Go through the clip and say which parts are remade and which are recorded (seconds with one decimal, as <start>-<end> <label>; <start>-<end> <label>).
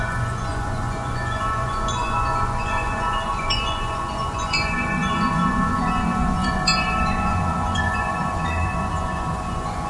0.0-9.9 remade